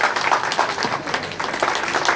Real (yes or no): yes